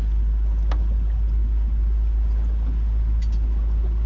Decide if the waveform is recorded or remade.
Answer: recorded